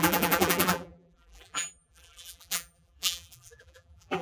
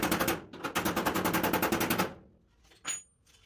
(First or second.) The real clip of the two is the second